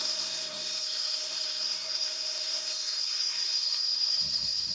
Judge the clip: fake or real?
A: fake